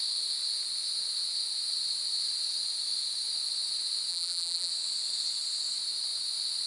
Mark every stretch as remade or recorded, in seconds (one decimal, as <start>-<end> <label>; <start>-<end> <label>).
0.0-4.1 recorded; 4.1-4.7 remade; 4.7-6.7 recorded